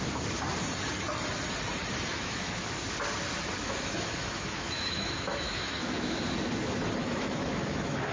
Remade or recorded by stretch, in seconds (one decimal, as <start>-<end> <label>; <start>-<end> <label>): 0.0-2.1 recorded; 2.1-2.8 remade; 2.8-3.6 recorded; 3.6-6.2 remade; 6.2-7.0 recorded; 7.0-8.1 remade